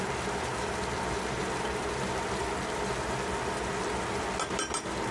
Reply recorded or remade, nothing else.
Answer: recorded